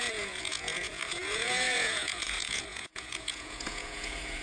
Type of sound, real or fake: fake